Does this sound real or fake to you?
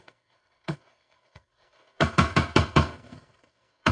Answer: fake